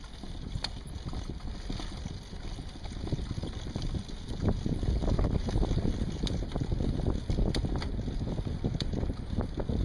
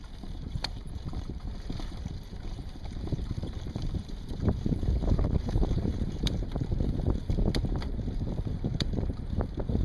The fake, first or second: second